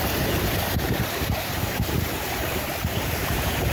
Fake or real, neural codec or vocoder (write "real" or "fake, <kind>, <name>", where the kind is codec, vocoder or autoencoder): fake, vocoder, BigVGAN v2